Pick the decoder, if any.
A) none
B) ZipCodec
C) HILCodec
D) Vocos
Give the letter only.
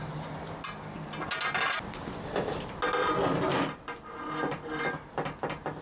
A